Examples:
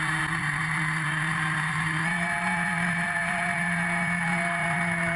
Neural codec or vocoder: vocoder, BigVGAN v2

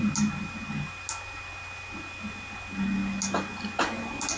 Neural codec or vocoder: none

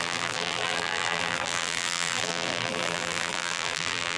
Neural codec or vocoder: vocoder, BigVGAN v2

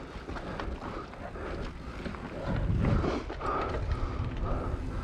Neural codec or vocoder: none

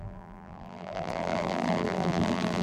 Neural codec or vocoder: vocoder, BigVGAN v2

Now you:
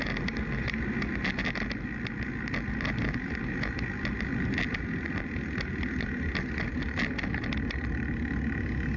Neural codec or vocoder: none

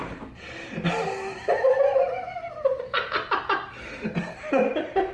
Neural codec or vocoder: vocoder, BigVGAN v2